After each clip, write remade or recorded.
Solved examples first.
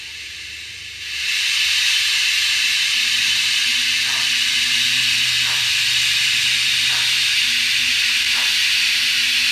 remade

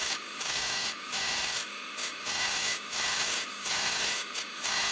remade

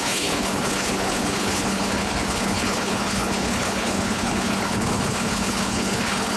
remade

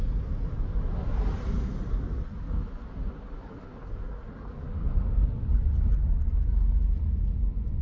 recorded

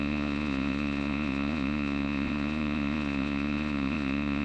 remade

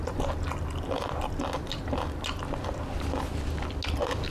recorded